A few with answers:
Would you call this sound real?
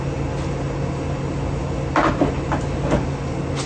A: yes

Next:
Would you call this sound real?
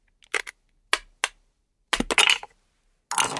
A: yes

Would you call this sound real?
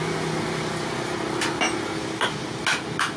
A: yes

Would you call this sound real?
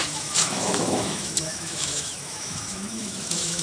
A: no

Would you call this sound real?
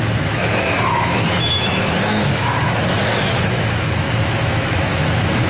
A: no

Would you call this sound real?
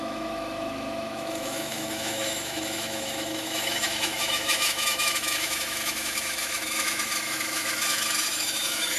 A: no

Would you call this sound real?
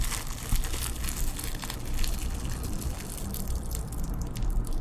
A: yes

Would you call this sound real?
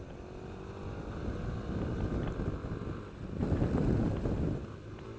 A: yes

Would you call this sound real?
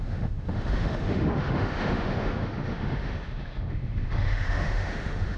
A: no